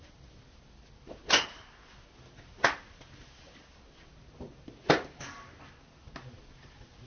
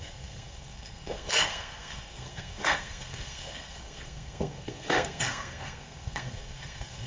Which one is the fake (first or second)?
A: second